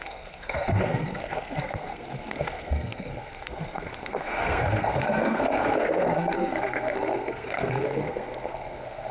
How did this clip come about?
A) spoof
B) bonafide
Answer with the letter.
A